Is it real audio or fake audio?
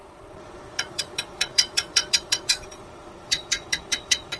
fake